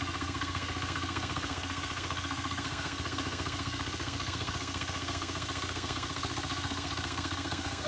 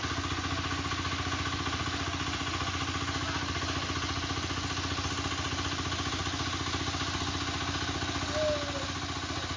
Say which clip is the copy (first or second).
first